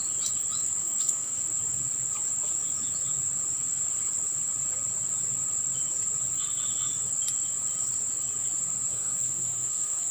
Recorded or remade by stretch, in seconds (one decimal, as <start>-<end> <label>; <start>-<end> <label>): 0.0-0.8 recorded; 0.8-1.4 remade; 1.4-8.9 recorded; 8.9-10.1 remade